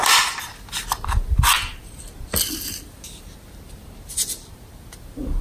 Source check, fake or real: real